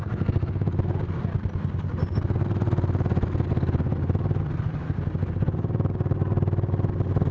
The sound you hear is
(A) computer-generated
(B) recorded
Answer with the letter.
B